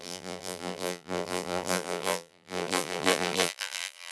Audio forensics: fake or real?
fake